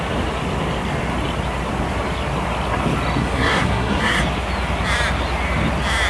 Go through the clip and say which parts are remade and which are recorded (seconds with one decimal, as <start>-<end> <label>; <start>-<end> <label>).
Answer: 0.0-3.2 recorded; 3.2-4.2 remade; 4.2-6.1 recorded